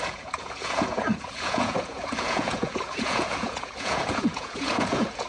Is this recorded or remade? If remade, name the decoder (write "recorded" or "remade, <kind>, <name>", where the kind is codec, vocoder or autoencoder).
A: remade, vocoder, Vocos